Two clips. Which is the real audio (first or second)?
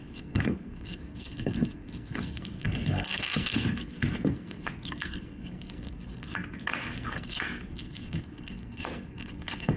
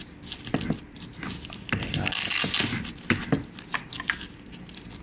second